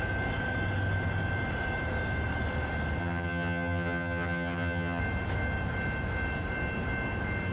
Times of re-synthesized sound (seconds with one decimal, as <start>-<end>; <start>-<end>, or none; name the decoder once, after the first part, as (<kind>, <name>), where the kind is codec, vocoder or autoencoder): 3.0-5.0 (vocoder, HiFi-GAN)